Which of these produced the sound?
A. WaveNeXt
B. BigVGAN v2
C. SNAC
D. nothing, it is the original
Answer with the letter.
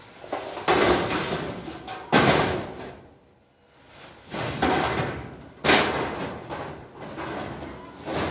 D